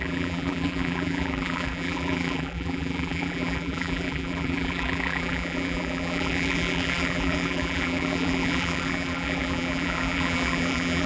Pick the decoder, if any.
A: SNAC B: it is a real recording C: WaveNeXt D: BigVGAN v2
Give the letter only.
D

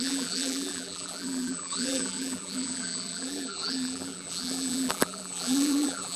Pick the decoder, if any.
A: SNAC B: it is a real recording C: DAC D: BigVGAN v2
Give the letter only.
D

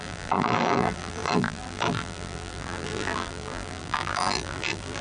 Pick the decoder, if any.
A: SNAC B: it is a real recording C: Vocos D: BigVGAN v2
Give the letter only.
D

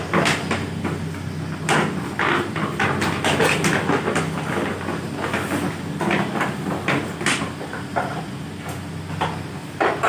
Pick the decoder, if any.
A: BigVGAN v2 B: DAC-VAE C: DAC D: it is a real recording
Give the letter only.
D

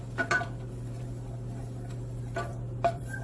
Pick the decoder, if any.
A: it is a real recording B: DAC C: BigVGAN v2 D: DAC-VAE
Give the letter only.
C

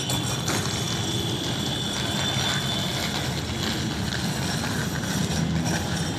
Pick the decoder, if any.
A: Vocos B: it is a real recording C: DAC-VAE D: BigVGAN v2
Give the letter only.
B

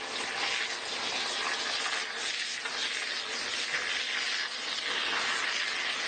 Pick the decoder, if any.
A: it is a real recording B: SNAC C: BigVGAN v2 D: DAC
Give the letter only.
A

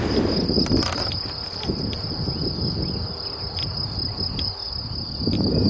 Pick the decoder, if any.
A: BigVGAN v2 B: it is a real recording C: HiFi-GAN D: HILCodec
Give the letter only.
B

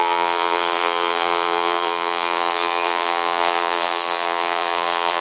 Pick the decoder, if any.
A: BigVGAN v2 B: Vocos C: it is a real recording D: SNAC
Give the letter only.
A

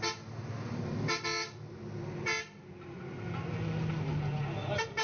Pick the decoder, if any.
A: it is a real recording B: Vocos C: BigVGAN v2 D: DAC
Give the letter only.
A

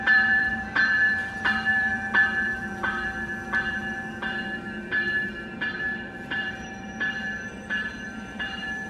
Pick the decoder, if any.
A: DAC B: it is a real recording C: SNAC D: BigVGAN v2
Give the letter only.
D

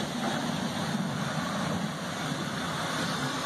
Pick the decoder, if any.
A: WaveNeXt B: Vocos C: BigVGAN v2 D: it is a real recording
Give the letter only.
C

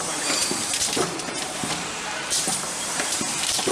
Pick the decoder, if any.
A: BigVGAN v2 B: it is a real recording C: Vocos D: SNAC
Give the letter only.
A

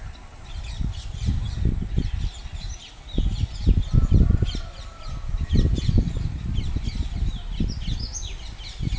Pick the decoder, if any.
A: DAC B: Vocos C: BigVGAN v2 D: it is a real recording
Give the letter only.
D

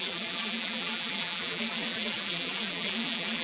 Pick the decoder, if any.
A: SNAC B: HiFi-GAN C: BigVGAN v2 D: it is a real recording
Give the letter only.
C